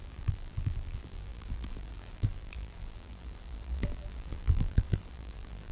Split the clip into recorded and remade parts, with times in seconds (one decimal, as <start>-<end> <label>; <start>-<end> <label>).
0.0-5.7 remade